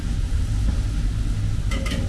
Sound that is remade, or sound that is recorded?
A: recorded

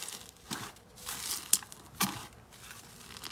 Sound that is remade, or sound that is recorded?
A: recorded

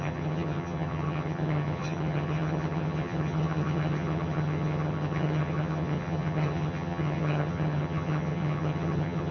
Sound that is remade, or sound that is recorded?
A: remade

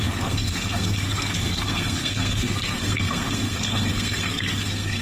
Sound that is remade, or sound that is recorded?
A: remade